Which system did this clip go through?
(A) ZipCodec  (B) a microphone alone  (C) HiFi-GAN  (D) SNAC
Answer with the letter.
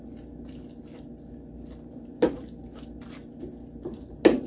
B